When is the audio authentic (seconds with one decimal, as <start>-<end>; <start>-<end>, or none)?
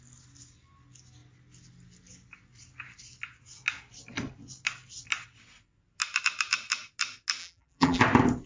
0.0-7.4; 8.0-8.5